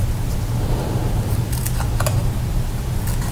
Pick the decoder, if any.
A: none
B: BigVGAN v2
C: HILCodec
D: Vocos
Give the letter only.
A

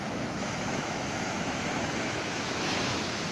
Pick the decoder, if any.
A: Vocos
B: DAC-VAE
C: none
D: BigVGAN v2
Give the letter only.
B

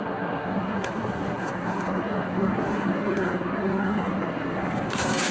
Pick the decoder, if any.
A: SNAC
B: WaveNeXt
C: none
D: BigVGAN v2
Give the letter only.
A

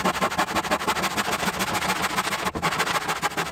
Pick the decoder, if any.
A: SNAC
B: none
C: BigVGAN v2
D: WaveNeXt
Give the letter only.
B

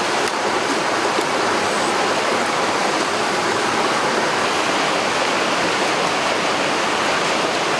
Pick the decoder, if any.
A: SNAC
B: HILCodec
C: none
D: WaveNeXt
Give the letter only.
C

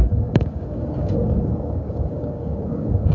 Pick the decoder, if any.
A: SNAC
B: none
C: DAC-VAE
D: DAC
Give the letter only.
D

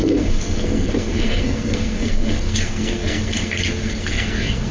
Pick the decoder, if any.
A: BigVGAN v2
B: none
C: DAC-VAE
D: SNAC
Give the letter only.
D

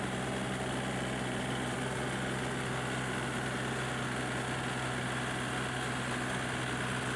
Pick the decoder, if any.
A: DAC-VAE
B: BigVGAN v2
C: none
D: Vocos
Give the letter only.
C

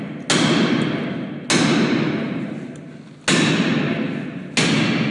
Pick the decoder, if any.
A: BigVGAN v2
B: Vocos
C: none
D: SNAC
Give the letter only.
C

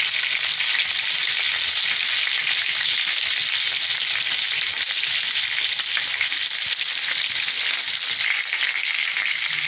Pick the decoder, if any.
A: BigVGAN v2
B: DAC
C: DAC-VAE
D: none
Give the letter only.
D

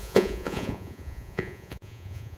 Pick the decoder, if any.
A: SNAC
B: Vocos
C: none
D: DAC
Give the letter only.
B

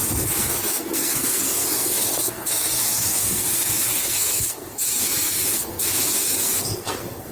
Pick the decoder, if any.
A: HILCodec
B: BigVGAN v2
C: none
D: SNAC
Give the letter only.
D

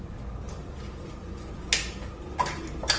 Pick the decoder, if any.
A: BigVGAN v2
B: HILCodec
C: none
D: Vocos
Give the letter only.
C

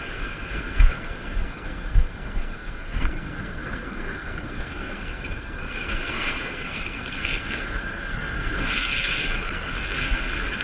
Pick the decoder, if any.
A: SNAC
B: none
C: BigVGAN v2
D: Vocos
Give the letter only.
A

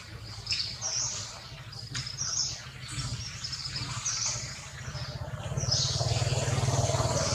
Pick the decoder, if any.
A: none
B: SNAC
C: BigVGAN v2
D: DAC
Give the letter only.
A